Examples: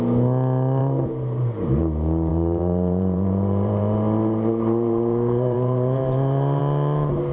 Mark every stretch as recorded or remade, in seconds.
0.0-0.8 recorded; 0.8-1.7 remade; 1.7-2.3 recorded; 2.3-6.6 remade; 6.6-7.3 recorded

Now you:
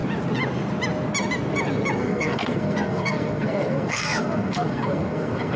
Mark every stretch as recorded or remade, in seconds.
0.0-2.0 recorded; 2.0-5.6 remade

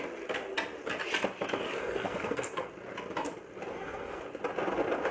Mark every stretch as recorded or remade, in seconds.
0.0-1.8 recorded; 1.8-2.7 remade; 2.7-3.7 recorded; 3.7-4.2 remade; 4.2-5.1 recorded

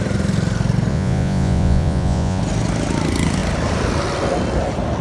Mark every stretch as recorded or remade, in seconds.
0.0-0.9 recorded; 0.9-2.4 remade; 2.4-5.0 recorded

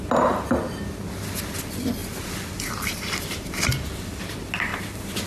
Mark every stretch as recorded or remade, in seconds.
0.0-2.0 recorded; 2.0-4.2 remade; 4.2-4.7 recorded; 4.7-5.3 remade